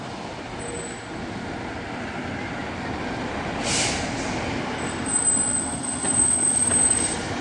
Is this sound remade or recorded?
recorded